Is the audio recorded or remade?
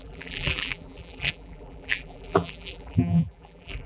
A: remade